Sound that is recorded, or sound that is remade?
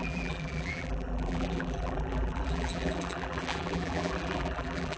remade